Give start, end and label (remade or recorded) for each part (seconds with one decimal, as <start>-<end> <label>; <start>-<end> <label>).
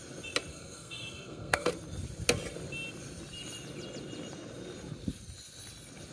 0.0-0.5 recorded; 0.5-1.7 remade; 1.7-6.1 recorded